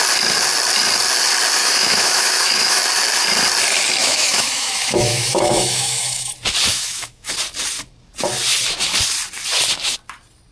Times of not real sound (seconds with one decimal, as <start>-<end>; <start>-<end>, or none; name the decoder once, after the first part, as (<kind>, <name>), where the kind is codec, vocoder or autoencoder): 1.6-2.8 (autoencoder, DAC-VAE); 4.0-6.3; 6.7-7.3